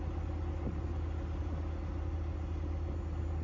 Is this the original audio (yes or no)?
yes